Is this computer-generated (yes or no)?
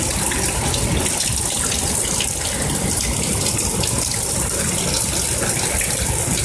no